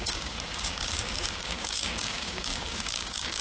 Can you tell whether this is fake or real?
fake